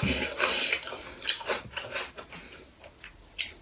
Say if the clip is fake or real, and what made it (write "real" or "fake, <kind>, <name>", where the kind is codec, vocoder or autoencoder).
real